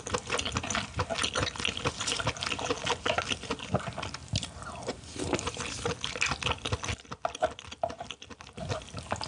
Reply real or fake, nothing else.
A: real